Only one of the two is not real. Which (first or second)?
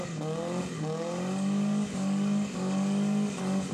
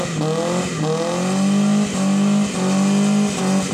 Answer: first